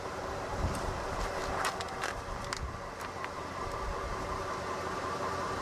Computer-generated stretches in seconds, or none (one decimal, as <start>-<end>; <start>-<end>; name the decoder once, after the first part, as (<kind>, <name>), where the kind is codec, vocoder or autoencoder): 0.0-1.4 (vocoder, BigVGAN v2); 3.0-5.6